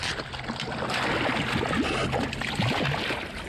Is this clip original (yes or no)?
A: yes